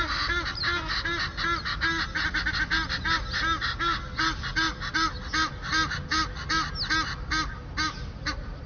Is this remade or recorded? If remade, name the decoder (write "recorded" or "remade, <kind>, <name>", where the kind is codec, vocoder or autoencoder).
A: recorded